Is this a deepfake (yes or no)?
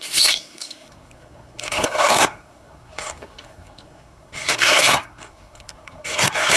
yes